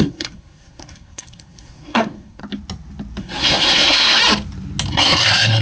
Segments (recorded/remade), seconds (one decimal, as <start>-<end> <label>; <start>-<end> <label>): 0.0-2.4 remade; 2.4-3.2 recorded; 3.2-4.2 remade; 4.2-4.9 recorded; 4.9-5.6 remade